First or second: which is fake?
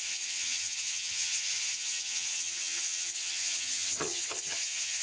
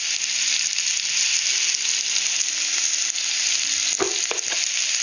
first